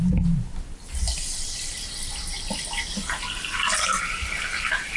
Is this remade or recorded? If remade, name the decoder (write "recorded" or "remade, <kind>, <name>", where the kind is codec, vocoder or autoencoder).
recorded